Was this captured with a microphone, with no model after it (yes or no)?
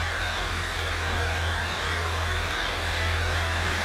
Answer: no